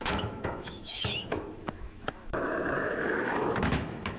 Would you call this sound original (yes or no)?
no